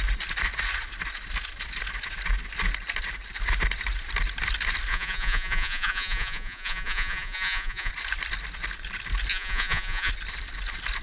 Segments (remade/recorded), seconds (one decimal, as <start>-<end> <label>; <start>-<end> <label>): 0.0-4.9 recorded; 4.9-7.9 remade; 7.9-9.3 recorded; 9.3-10.1 remade; 10.1-11.0 recorded

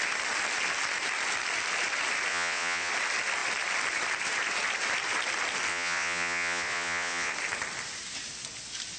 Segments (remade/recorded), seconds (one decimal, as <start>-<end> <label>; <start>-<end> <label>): 0.0-2.3 recorded; 2.3-2.9 remade; 2.9-5.7 recorded; 5.7-7.3 remade; 7.3-9.0 recorded

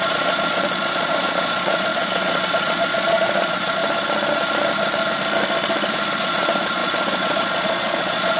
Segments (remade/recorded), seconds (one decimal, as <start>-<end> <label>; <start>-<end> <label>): 0.0-3.8 remade; 3.8-6.2 recorded; 6.2-8.4 remade

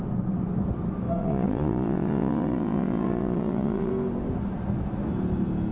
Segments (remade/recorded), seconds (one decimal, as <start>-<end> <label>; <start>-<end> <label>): 0.0-1.2 recorded; 1.2-3.9 remade; 3.9-5.7 recorded

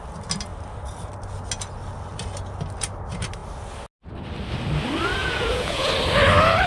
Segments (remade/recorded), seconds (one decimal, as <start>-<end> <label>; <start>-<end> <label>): 0.0-5.2 recorded; 5.2-5.9 remade; 5.9-6.7 recorded

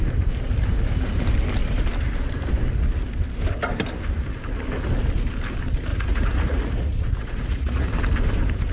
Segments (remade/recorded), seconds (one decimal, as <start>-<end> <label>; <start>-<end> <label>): 0.0-5.9 recorded; 5.9-7.9 remade; 7.9-8.7 recorded

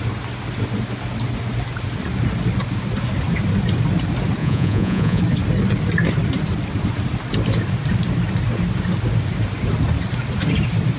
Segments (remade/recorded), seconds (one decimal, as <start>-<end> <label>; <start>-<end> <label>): 0.0-4.4 recorded; 4.4-5.2 remade; 5.2-11.0 recorded

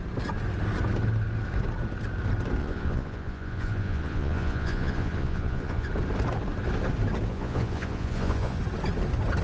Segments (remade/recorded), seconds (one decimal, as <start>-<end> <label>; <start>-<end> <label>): 0.0-2.6 recorded; 2.6-5.9 remade; 5.9-7.3 recorded; 7.3-8.6 remade; 8.6-9.4 recorded